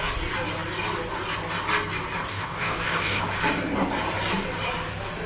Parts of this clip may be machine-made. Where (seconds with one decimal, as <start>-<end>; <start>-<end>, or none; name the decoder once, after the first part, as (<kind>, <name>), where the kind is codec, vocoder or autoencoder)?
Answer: 2.3-3.2 (codec, DAC)